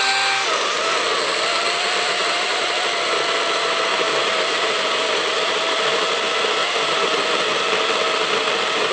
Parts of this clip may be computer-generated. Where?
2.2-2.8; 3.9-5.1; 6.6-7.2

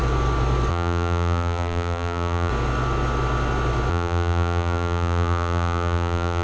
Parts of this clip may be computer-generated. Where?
0.7-2.5; 3.9-6.4

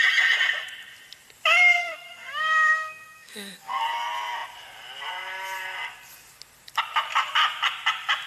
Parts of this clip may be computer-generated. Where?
1.8-3.8